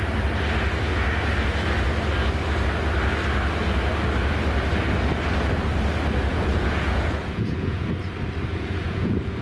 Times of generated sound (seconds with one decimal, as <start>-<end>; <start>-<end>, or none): 6.3-8.0; 8.5-9.4